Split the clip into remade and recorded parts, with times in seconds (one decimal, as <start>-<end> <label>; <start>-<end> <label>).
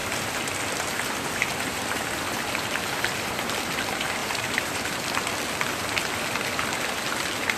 0.0-4.2 recorded; 4.2-4.9 remade; 4.9-7.6 recorded